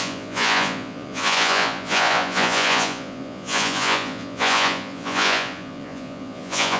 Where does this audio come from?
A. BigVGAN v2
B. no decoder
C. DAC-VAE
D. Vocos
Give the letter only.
D